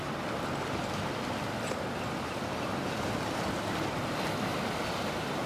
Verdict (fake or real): real